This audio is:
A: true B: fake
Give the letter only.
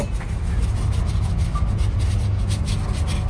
A